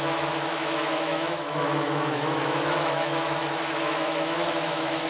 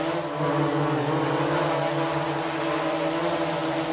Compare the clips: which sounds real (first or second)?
second